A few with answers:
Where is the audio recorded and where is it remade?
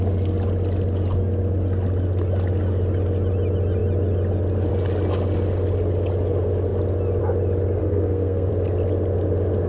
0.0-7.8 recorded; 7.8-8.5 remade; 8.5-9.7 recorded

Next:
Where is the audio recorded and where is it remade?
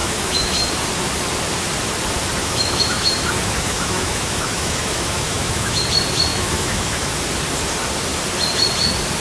0.0-0.7 remade; 0.7-2.4 recorded; 2.4-5.8 remade; 5.8-6.3 recorded; 6.3-7.2 remade; 7.2-9.2 recorded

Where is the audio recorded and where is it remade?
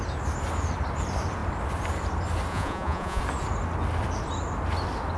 0.0-2.5 recorded; 2.5-3.2 remade; 3.2-5.2 recorded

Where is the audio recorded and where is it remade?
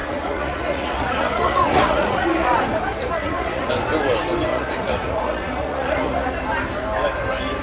0.0-2.6 remade; 2.6-3.0 recorded; 3.0-3.7 remade; 3.7-4.5 recorded; 4.5-6.3 remade; 6.3-7.6 recorded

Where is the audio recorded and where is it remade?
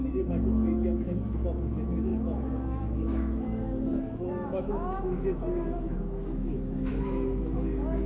0.0-8.1 remade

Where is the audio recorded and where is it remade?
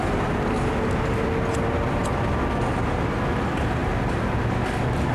0.0-5.1 recorded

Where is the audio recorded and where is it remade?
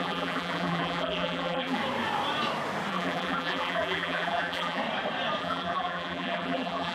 0.0-1.8 remade; 1.8-2.9 recorded; 2.9-4.8 remade; 4.8-5.4 recorded; 5.4-6.9 remade